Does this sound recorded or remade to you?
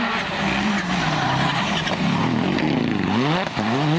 recorded